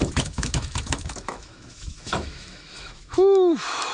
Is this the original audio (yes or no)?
no